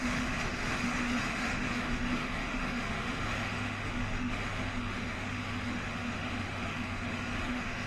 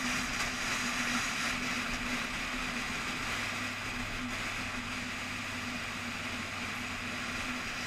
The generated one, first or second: first